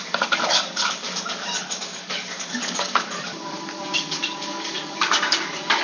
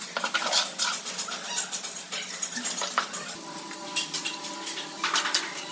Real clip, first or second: second